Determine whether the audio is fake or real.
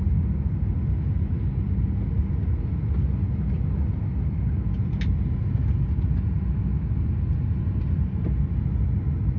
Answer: real